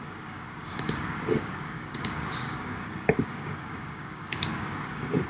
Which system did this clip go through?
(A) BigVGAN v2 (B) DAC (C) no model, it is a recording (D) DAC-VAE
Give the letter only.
B